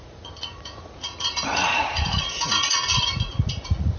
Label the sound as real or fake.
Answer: fake